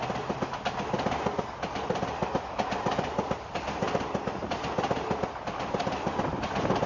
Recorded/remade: recorded